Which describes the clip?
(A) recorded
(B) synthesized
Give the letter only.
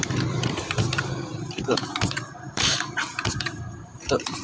B